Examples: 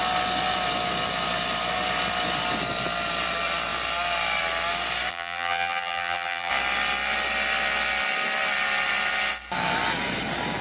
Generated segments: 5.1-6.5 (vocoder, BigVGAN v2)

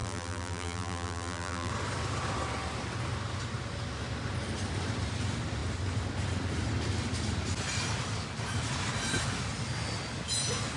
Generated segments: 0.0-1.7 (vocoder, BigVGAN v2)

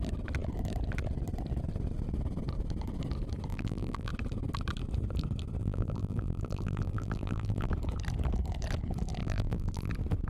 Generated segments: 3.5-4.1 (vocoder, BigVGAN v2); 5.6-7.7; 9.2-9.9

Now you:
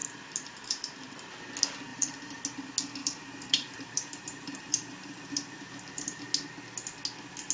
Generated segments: 0.0-1.4 (vocoder, BigVGAN v2); 1.9-2.4; 3.0-6.3

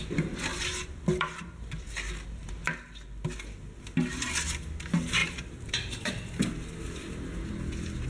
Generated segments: 0.5-2.5 (vocoder, BigVGAN v2); 5.2-6.1